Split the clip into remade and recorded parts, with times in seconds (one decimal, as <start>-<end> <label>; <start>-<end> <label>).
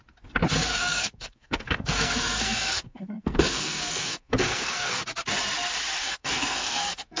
0.0-0.7 recorded; 0.7-5.0 remade; 5.0-6.0 recorded; 6.0-7.2 remade